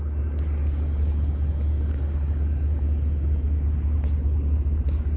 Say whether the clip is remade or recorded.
recorded